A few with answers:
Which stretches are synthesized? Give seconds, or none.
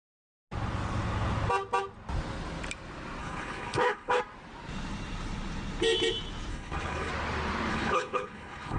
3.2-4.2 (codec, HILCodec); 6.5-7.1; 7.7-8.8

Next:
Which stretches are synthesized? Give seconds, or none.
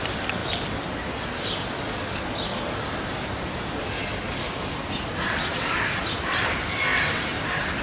none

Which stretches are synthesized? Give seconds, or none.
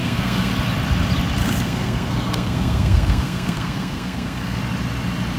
0.0-0.5 (codec, SNAC); 1.4-4.6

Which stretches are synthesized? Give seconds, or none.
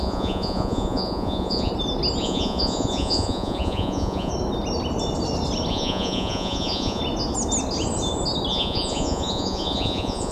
0.0-1.7 (vocoder, Vocos); 2.2-4.3; 5.7-7.0; 8.5-10.3